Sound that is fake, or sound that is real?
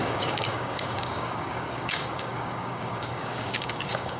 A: fake